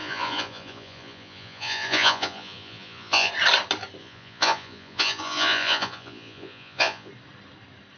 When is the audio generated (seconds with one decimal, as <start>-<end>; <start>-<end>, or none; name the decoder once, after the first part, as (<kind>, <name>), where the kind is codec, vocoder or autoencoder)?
0.0-3.3 (vocoder, Vocos); 4.0-7.1